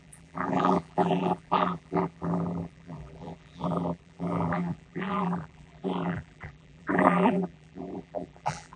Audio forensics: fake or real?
fake